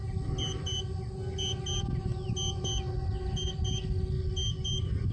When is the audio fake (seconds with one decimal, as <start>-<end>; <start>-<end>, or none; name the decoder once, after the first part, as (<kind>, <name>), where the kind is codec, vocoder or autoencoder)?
none